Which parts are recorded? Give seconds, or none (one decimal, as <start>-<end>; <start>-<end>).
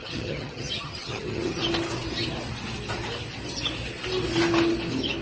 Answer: 1.6-5.2